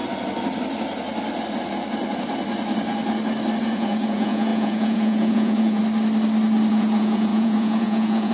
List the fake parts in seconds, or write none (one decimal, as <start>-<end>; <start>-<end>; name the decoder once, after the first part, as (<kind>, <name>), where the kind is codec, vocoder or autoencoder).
3.6-5.8 (vocoder, Vocos); 6.7-8.3